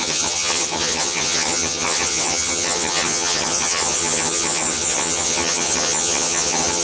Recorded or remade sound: remade